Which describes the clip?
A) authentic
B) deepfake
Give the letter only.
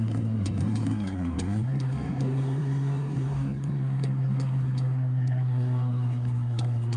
B